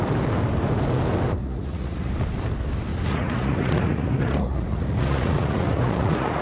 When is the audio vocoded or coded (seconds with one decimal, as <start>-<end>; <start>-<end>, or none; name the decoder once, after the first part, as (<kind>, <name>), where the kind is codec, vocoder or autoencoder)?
1.4-2.1 (vocoder, Vocos); 2.9-6.4